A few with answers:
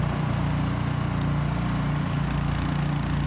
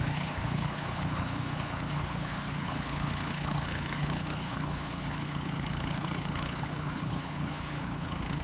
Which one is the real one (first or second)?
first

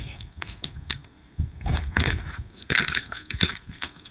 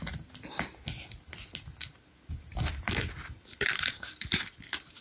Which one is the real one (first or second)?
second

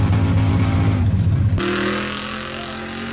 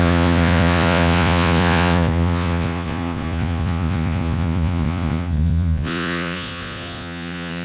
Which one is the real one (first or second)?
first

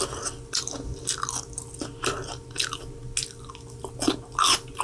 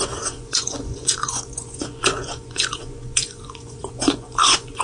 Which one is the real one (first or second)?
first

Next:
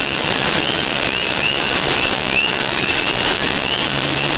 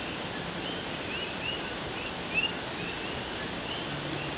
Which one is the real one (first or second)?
second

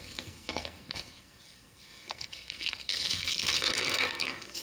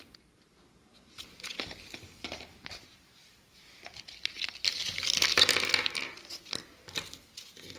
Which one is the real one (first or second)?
second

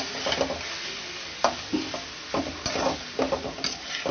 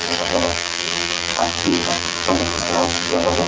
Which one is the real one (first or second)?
first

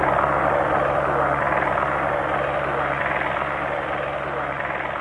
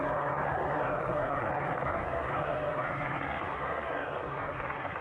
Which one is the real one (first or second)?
first